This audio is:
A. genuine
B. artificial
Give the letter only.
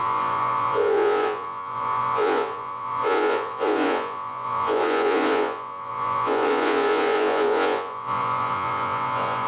B